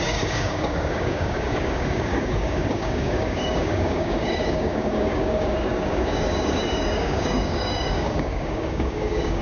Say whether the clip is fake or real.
fake